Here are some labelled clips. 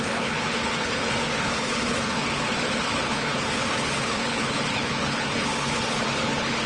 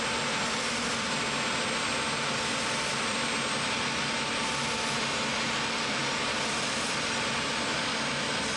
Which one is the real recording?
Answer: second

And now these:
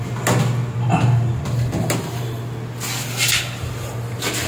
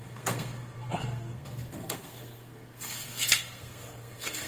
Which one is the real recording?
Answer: first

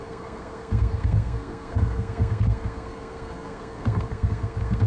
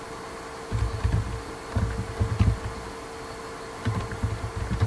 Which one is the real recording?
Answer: second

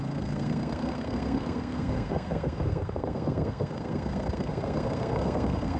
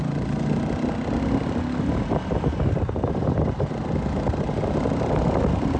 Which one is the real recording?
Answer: second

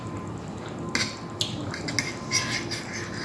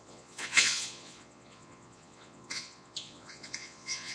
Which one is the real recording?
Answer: first